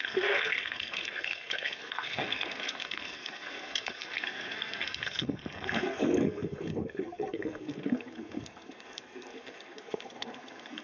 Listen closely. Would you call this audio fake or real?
fake